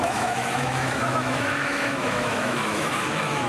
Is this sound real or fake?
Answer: fake